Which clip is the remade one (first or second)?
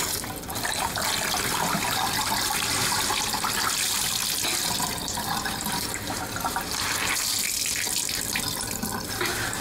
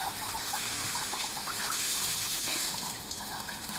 second